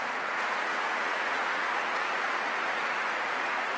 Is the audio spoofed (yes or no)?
yes